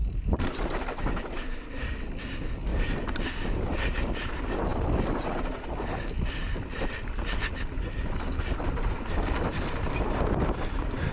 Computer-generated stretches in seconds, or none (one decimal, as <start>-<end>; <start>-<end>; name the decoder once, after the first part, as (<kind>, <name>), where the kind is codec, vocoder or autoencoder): 0.0-0.8 (vocoder, BigVGAN v2); 2.7-4.1